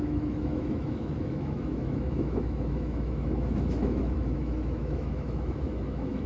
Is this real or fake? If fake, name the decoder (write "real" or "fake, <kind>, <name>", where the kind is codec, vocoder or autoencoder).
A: fake, autoencoder, DAC-VAE